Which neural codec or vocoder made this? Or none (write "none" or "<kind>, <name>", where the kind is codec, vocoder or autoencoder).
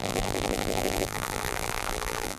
vocoder, BigVGAN v2